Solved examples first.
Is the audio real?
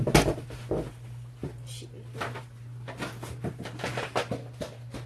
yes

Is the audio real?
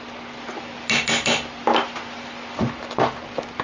yes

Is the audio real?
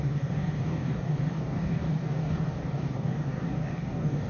no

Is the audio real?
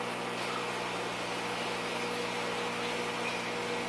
yes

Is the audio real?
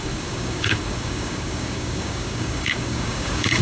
no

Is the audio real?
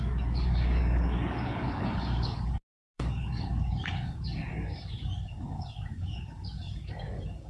no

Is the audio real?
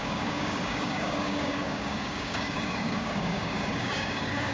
no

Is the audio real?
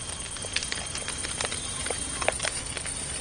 yes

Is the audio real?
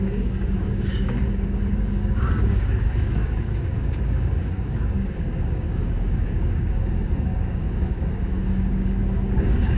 no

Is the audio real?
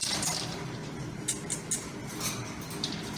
yes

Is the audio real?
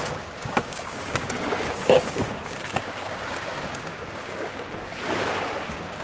no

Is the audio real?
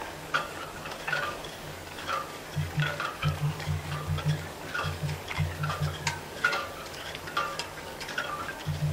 no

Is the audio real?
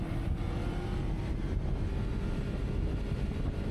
yes